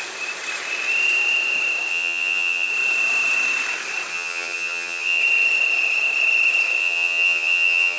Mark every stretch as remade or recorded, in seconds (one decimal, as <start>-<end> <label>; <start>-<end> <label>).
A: 0.0-1.9 recorded; 1.9-2.7 remade; 2.7-4.1 recorded; 4.1-5.2 remade; 5.2-6.8 recorded; 6.8-8.0 remade